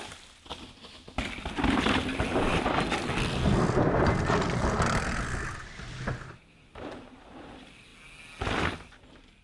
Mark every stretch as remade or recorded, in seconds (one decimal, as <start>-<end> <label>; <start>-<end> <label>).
0.0-9.4 recorded